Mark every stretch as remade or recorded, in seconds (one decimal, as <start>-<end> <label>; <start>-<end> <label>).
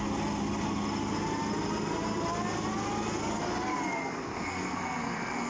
0.0-4.0 recorded; 4.0-5.5 remade